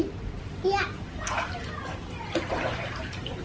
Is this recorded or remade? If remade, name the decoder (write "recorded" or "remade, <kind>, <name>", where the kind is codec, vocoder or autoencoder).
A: recorded